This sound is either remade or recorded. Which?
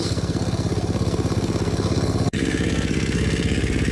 remade